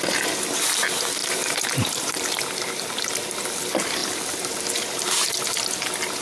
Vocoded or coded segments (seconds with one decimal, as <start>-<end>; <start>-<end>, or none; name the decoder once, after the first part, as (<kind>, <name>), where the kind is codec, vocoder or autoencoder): 1.2-2.4 (vocoder, BigVGAN v2)